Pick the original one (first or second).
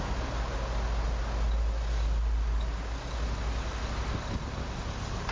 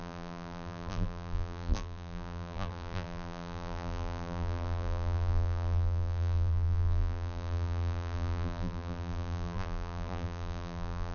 first